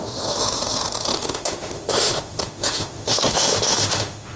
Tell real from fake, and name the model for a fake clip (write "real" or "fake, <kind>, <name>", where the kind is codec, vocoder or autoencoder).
fake, autoencoder, DAC-VAE